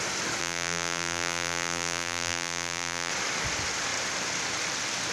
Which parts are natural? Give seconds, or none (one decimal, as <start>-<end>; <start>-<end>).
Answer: 0.0-0.4; 3.1-5.1